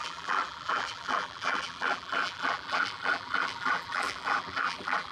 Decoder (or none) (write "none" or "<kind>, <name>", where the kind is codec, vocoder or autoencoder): vocoder, BigVGAN v2